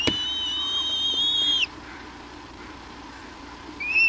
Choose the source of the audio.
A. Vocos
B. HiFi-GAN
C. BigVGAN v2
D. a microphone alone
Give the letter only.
C